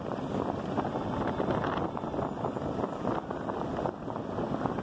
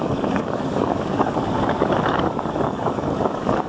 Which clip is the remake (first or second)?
second